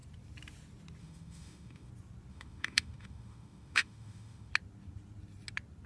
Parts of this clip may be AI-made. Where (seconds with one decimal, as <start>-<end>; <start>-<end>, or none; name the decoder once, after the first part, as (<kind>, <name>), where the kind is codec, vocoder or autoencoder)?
1.0-1.9 (autoencoder, DAC-VAE); 2.3-4.5